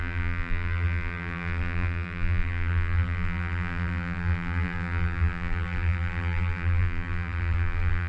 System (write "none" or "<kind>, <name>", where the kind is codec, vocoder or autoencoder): vocoder, BigVGAN v2